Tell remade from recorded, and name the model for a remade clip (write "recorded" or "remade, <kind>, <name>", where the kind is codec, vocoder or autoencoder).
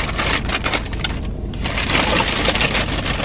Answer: recorded